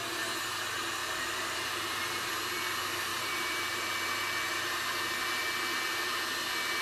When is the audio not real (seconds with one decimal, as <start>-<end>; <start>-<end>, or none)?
1.0-2.3; 3.1-3.9